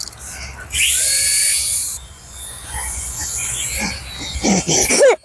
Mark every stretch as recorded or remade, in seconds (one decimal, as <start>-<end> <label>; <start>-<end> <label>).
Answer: 0.0-1.8 recorded; 1.8-3.9 remade; 3.9-5.2 recorded